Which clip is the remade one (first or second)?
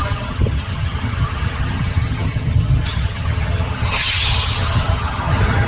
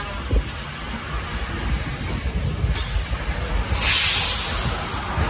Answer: first